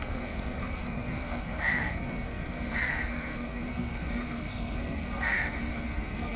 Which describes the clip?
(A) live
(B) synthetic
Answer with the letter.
B